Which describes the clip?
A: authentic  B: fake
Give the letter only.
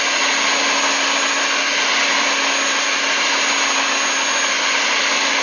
A